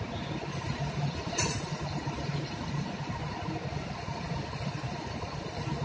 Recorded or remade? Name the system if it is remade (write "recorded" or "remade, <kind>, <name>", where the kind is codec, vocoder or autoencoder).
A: recorded